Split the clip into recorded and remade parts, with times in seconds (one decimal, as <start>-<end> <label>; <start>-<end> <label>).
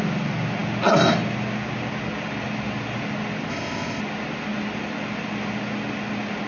0.0-3.5 recorded; 3.5-4.0 remade; 4.0-6.5 recorded